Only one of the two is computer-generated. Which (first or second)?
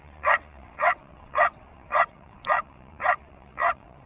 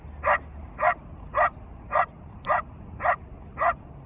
first